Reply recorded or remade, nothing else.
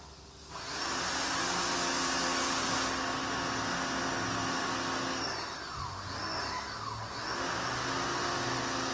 recorded